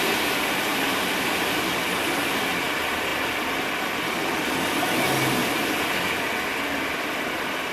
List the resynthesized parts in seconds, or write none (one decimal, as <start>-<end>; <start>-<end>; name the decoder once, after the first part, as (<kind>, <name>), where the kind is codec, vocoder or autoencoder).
none